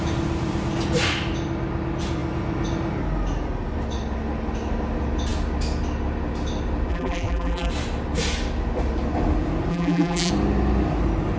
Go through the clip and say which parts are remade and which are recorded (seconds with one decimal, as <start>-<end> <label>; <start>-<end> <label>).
0.0-6.9 recorded; 6.9-7.7 remade; 7.7-9.7 recorded; 9.7-10.3 remade; 10.3-11.4 recorded